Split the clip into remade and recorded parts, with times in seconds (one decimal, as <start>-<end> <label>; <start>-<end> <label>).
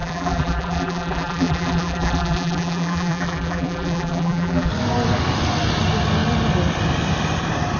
0.0-4.7 remade; 4.7-7.8 recorded